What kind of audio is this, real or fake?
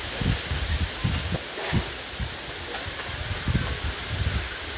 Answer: real